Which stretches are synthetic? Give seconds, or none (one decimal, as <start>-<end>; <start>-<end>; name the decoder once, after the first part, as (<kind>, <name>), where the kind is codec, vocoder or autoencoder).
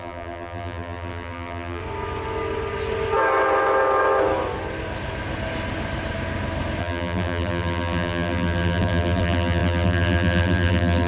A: 0.0-1.8 (vocoder, BigVGAN v2); 6.8-11.1